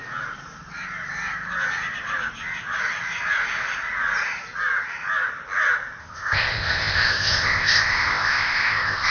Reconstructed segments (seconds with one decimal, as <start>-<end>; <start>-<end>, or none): 6.0-9.1